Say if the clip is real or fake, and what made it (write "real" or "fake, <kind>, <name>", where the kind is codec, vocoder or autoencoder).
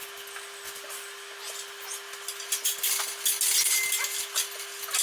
real